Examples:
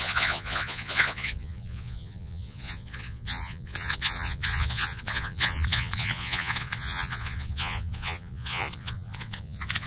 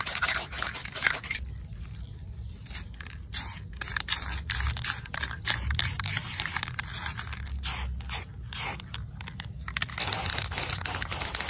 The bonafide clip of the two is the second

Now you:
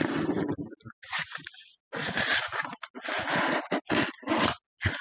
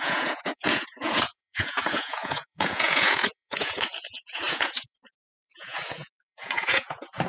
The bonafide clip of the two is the first